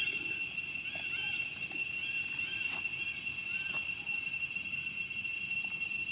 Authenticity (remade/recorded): recorded